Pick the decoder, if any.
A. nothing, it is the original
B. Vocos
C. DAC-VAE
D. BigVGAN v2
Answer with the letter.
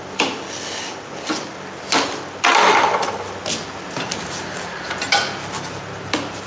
A